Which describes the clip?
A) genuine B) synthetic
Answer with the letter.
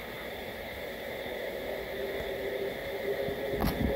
A